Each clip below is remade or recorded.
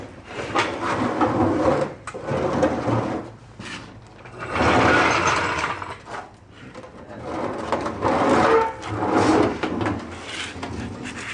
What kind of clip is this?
recorded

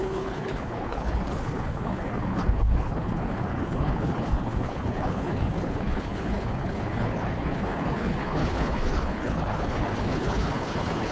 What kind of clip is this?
remade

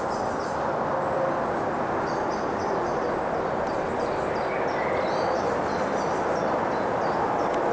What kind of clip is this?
recorded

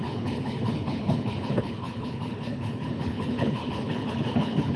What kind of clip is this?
remade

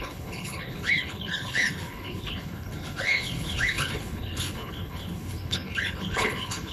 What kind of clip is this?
remade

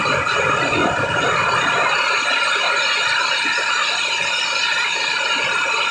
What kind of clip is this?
recorded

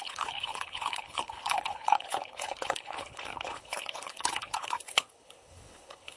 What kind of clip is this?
remade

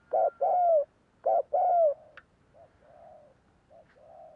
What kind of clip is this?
recorded